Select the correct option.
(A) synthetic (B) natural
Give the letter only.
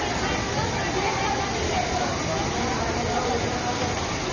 B